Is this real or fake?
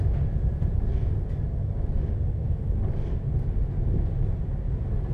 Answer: real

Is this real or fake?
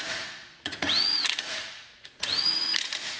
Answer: fake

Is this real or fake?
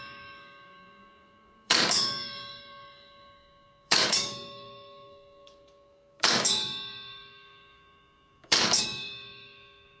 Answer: fake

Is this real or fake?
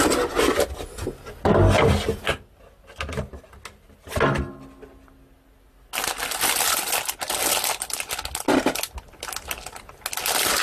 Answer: real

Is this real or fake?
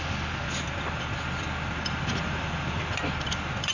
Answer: real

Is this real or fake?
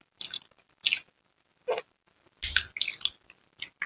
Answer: real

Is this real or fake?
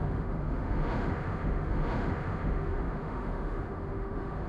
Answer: fake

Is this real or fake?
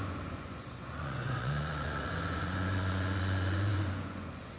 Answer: fake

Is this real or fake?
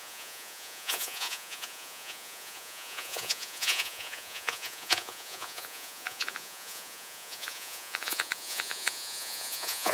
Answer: fake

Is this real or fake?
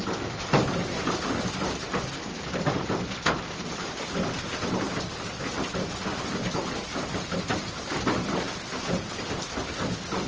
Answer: real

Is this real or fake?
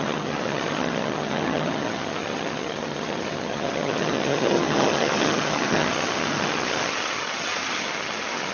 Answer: fake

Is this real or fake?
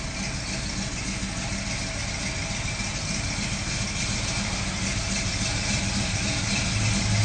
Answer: real